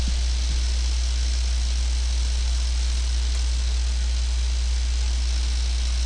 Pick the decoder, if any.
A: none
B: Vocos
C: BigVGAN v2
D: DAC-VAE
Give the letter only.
A